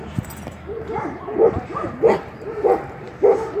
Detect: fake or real fake